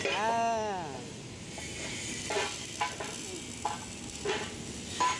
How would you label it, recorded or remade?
recorded